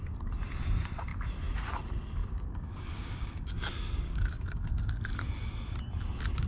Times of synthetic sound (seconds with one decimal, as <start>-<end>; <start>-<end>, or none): 2.2-4.9